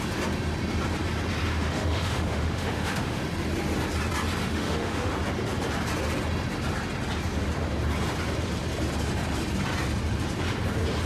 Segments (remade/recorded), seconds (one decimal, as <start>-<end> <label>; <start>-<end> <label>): 0.0-1.5 recorded; 1.5-3.2 remade; 3.2-4.4 recorded; 4.4-5.1 remade; 5.1-11.1 recorded